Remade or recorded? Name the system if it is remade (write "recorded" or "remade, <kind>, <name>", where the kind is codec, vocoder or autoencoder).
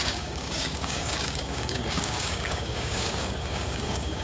remade, codec, DAC